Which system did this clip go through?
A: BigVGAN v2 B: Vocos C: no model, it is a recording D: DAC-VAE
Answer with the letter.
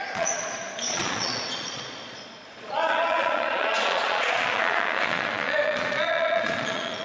B